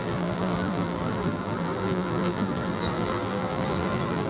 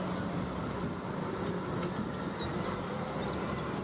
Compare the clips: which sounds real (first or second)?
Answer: second